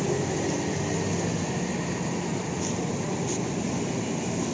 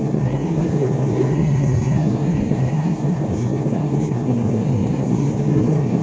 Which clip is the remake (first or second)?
second